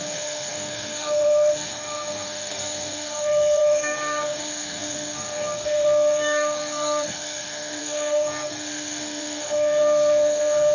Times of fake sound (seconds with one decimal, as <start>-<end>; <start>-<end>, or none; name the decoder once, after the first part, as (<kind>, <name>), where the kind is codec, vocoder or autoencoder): 0.0-10.7 (codec, SNAC)